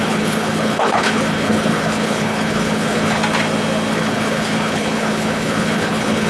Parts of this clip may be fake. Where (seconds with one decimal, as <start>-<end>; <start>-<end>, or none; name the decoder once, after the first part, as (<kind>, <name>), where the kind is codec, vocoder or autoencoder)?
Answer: 0.0-3.2 (codec, HILCodec); 3.9-6.3